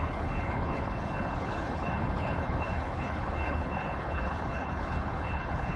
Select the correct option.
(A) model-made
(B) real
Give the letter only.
A